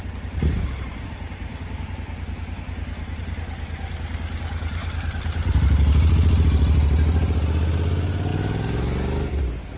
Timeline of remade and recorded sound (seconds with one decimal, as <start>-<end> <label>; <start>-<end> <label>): 0.0-4.8 recorded; 4.8-5.6 remade; 5.6-9.8 recorded